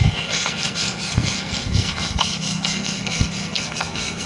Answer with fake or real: fake